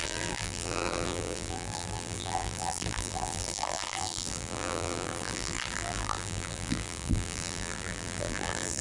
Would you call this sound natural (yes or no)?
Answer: no